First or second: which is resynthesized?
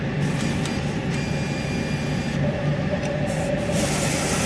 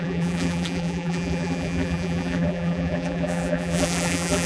second